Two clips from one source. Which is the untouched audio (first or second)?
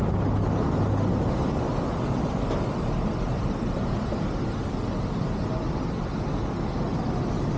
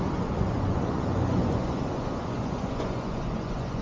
first